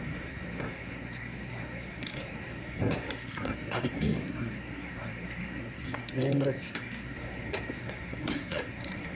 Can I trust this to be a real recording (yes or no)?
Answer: no